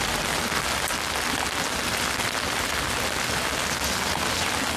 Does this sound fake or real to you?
real